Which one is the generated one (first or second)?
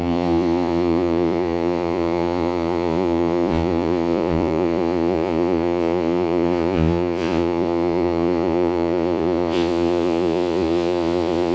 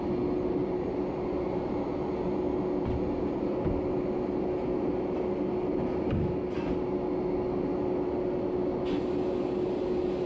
first